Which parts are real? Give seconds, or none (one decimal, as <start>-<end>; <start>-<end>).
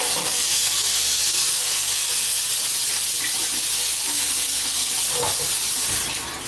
2.4-3.7; 4.9-6.5